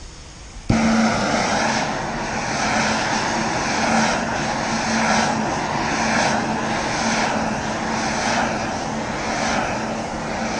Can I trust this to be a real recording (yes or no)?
yes